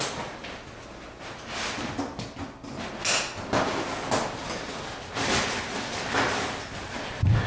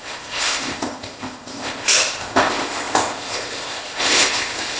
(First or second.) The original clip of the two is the first